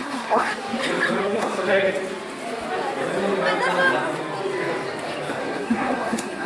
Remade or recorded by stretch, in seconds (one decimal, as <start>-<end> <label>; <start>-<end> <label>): 0.0-0.5 remade; 0.5-1.2 recorded; 1.2-1.9 remade; 1.9-5.4 recorded; 5.4-6.5 remade